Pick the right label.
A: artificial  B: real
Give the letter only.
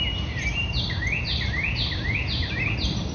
B